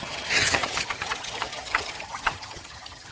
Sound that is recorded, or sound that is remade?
remade